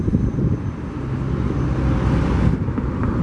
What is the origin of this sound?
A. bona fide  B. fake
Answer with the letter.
A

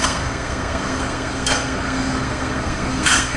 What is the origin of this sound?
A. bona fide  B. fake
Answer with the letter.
B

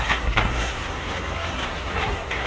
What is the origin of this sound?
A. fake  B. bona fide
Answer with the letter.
A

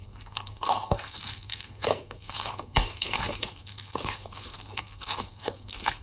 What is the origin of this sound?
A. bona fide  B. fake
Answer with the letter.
B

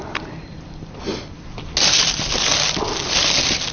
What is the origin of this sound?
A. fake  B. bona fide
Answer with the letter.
B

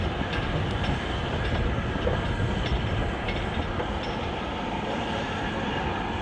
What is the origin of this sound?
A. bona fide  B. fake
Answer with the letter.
A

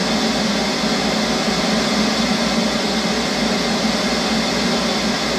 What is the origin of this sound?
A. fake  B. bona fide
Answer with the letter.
B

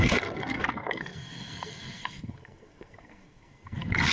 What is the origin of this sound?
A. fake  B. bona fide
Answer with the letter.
A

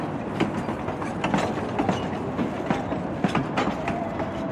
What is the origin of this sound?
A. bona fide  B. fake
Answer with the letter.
A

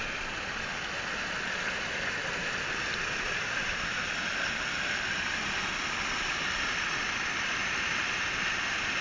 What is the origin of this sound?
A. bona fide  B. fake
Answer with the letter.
A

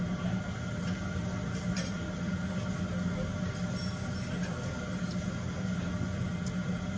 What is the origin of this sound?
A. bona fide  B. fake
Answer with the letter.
A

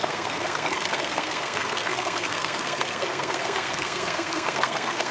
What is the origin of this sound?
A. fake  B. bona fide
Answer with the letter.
A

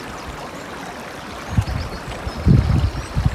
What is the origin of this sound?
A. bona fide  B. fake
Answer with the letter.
A